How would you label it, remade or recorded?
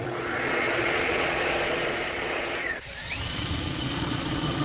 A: remade